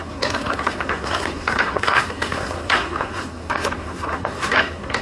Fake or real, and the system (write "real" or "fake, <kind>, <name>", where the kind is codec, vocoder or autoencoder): fake, codec, SNAC